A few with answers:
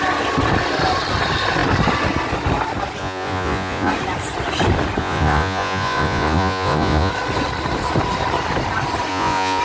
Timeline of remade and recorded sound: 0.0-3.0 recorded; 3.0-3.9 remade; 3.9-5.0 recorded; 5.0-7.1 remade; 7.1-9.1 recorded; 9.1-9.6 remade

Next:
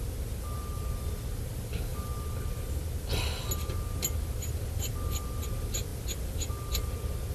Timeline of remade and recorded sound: 0.0-7.3 recorded

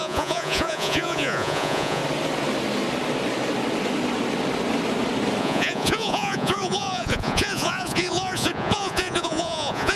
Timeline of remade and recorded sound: 0.0-2.0 remade; 2.0-5.4 recorded; 5.4-10.0 remade

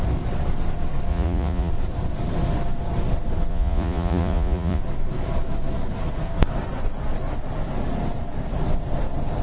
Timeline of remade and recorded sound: 0.0-1.1 recorded; 1.1-1.7 remade; 1.7-3.5 recorded; 3.5-4.8 remade; 4.8-9.4 recorded